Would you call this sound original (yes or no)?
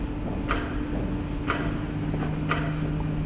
yes